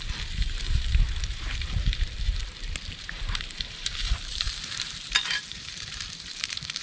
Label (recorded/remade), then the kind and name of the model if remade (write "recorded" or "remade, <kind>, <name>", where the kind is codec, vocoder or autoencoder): remade, vocoder, BigVGAN v2